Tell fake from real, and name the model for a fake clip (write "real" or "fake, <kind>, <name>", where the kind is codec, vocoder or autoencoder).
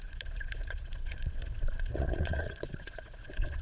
fake, vocoder, Vocos